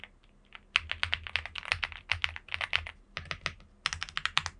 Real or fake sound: real